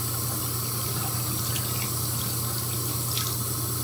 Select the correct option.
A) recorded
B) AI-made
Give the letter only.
A